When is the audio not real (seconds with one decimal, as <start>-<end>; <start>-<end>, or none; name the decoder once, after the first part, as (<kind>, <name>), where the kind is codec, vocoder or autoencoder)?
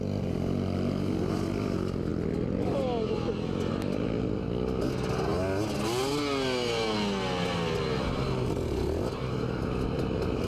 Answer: none